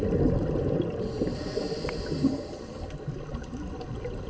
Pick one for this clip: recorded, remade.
recorded